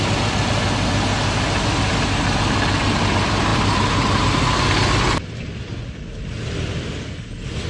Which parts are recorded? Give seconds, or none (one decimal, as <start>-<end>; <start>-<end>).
0.0-7.7